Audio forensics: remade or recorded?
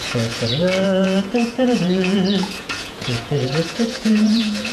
remade